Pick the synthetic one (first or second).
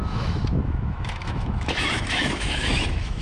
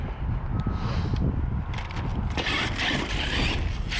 first